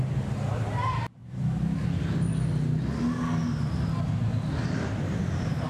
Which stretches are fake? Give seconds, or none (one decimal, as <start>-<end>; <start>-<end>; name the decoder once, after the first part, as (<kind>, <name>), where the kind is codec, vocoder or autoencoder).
0.0-1.2 (vocoder, BigVGAN v2); 4.6-5.7